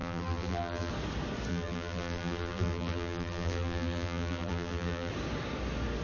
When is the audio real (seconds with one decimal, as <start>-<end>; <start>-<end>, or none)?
0.9-1.5; 5.1-6.0